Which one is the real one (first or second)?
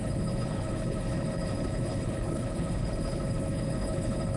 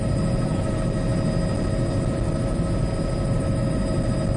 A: second